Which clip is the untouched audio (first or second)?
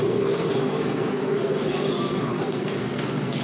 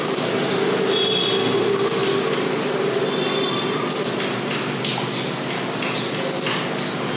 second